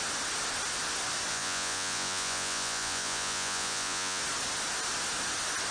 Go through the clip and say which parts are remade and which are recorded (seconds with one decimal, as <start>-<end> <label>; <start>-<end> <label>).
0.0-1.3 recorded; 1.3-4.2 remade; 4.2-5.7 recorded